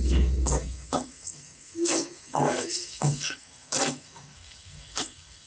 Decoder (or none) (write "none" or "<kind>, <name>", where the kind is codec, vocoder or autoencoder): codec, SNAC